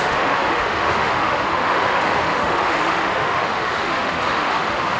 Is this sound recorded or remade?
remade